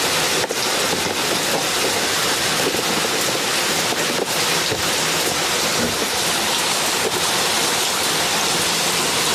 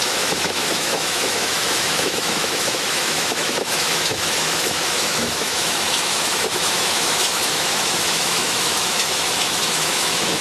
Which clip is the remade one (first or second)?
second